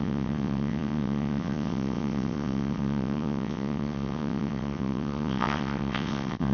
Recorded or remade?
remade